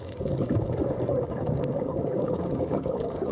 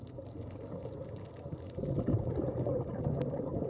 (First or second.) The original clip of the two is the second